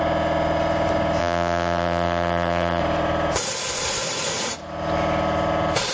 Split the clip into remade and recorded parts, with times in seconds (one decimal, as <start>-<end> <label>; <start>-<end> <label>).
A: 0.0-1.2 recorded; 1.2-2.8 remade; 2.8-5.9 recorded